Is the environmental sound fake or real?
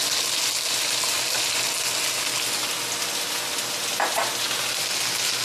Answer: real